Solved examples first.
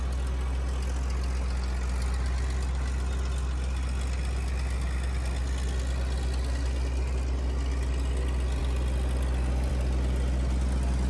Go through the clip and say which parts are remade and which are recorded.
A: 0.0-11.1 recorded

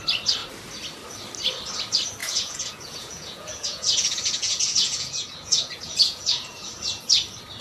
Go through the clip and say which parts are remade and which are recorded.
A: 0.0-2.2 recorded; 2.2-6.7 remade; 6.7-7.6 recorded

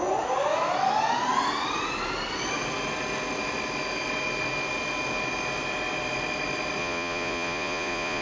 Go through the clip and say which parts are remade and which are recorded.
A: 0.0-6.8 recorded; 6.8-8.2 remade

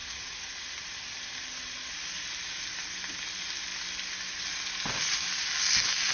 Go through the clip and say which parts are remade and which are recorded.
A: 0.0-0.6 remade; 0.6-6.1 recorded

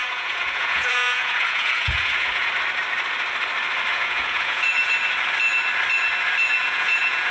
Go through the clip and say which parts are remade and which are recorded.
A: 0.0-2.5 remade; 2.5-3.9 recorded; 3.9-4.9 remade; 4.9-6.6 recorded; 6.6-7.3 remade